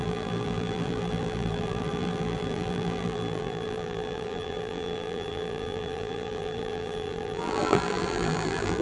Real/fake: fake